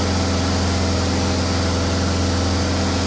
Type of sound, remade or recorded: recorded